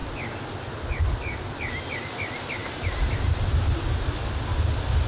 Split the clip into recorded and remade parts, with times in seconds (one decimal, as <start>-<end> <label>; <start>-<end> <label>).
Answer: 0.0-5.1 recorded